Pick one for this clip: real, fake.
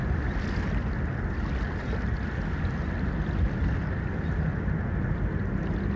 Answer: real